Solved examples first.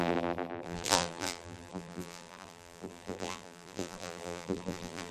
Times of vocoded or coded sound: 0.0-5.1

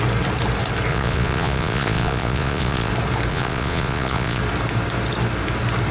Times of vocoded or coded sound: 0.9-2.9; 3.3-4.4